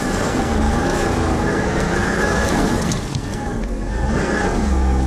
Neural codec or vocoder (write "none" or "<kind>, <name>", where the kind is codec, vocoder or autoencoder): codec, SNAC